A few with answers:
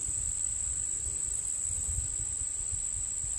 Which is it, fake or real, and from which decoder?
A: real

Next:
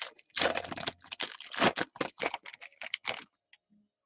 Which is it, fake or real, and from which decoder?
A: real